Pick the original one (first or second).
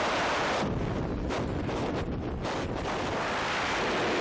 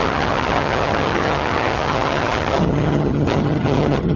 first